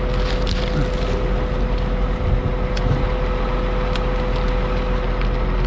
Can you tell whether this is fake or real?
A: real